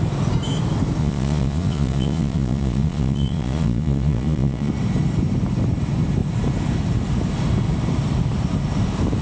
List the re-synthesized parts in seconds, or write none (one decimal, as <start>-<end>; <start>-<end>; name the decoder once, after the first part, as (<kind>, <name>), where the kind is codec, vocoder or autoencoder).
1.0-4.7 (vocoder, Vocos)